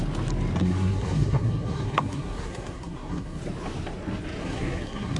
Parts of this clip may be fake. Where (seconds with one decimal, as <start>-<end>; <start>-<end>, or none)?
0.6-3.4; 4.4-5.2

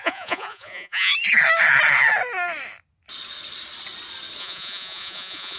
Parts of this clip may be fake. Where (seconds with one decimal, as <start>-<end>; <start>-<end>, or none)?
0.0-1.1; 4.4-5.6

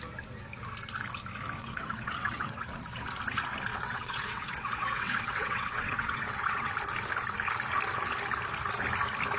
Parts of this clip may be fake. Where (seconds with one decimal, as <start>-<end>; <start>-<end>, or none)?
1.6-2.8; 3.7-6.7

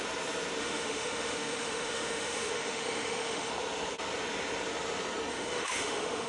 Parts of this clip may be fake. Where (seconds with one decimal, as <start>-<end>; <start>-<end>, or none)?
0.6-3.5; 5.3-6.3

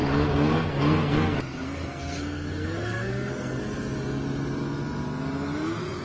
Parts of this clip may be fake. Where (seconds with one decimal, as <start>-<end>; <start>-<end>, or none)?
0.0-3.6

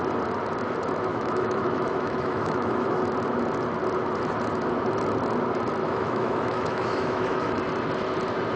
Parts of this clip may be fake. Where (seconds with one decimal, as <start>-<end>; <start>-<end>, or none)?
1.1-3.0; 5.8-7.6

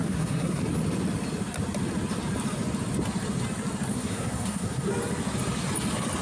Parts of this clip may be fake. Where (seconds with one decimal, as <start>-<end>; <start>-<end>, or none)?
0.0-0.6; 3.9-4.9